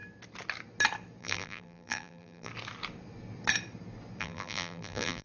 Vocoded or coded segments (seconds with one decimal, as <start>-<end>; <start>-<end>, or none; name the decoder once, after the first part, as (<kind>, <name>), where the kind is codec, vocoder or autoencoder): 1.2-2.5 (vocoder, BigVGAN v2); 4.2-5.2